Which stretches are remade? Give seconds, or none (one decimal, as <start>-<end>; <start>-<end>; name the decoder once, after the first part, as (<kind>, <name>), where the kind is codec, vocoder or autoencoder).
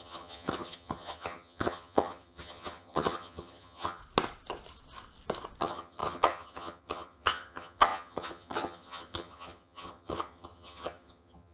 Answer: 0.0-4.0 (vocoder, HiFi-GAN); 5.6-11.5